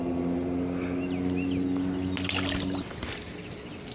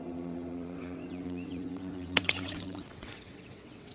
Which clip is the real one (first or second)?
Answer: first